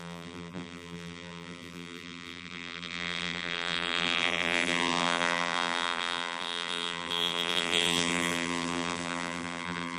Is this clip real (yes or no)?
no